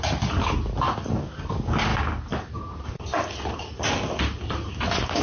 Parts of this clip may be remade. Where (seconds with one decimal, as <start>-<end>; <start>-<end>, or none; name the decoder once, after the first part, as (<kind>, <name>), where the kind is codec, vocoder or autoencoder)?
none

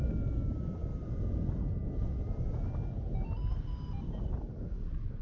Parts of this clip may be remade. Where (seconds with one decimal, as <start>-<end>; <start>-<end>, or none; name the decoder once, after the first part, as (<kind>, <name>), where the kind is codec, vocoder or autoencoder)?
none

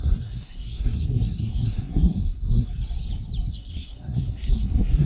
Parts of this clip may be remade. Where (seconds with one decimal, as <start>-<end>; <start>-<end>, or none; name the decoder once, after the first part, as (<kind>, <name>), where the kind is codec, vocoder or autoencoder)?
0.0-2.7 (codec, SNAC); 3.5-5.1

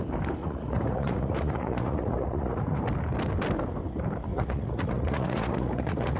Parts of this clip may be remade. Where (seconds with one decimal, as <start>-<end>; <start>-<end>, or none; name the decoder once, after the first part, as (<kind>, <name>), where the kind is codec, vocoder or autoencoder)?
0.4-2.8 (vocoder, Vocos); 4.3-6.2